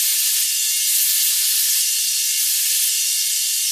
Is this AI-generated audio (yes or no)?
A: no